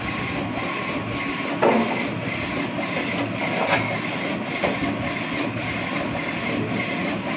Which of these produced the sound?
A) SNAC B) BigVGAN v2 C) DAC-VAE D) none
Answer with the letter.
D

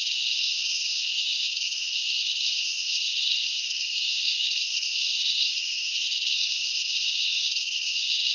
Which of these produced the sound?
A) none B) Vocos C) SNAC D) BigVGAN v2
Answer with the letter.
C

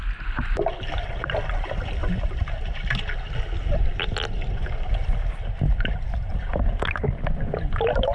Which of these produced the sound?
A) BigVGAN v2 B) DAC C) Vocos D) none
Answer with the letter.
D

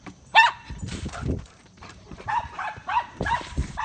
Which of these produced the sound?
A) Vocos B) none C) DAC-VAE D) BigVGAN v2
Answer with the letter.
D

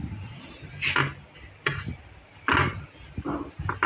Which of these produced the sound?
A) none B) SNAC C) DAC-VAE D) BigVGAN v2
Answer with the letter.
A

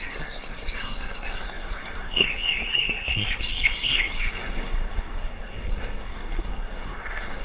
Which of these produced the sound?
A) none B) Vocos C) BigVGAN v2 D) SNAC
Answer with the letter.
D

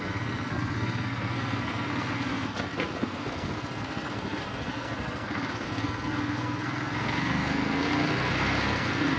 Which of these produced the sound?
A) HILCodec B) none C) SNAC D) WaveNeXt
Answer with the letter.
C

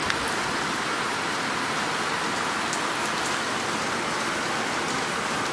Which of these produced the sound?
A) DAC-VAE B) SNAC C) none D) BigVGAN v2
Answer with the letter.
C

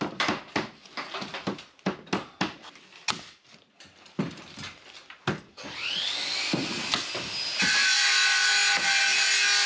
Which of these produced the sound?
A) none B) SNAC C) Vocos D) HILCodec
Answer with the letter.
A